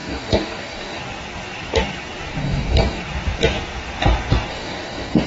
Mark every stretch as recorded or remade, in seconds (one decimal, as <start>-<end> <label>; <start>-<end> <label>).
0.0-1.0 remade; 1.0-2.4 recorded; 2.4-3.0 remade; 3.0-4.5 recorded; 4.5-5.3 remade